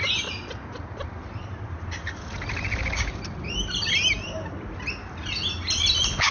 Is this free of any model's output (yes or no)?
yes